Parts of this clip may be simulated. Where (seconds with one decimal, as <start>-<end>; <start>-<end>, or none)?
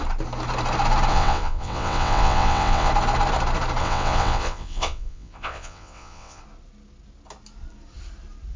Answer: 1.1-2.9; 3.8-6.4